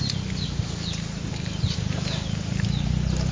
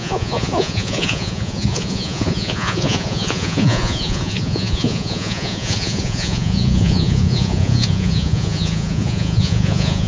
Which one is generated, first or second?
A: second